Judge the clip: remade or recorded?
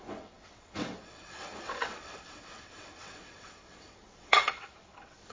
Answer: remade